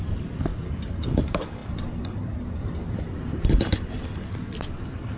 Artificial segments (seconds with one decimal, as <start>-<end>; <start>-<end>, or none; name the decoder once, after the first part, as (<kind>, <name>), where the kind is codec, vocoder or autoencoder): 0.0-5.2 (vocoder, BigVGAN v2)